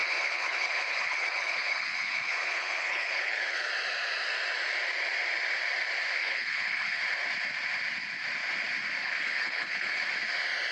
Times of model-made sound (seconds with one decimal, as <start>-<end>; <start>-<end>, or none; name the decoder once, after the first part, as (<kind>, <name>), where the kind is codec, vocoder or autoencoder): 0.0-3.7 (codec, HILCodec); 6.2-7.0; 9.0-10.0